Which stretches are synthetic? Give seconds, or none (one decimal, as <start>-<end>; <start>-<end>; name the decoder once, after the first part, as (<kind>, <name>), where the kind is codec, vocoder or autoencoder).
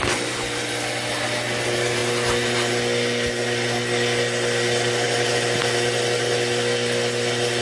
none